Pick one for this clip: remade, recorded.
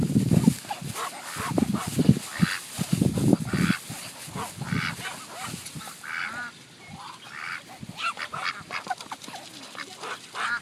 recorded